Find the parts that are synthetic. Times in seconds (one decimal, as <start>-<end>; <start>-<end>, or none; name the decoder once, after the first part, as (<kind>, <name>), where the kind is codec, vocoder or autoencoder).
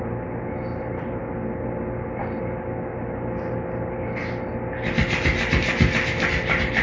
0.7-1.2 (vocoder, BigVGAN v2)